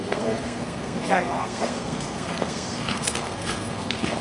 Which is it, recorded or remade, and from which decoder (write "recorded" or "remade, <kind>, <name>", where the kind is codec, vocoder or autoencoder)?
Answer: remade, codec, SNAC